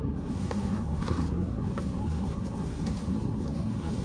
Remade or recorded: remade